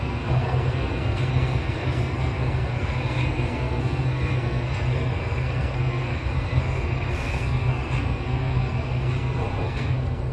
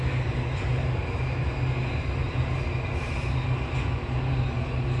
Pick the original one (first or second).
second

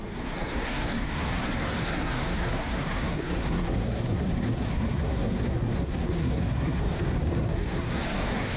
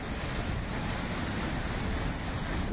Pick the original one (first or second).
second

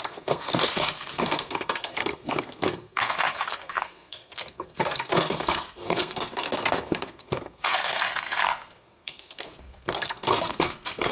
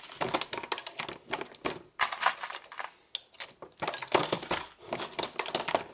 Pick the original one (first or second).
second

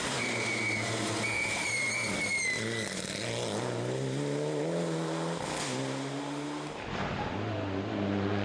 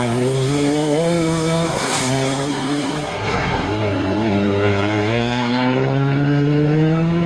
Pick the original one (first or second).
first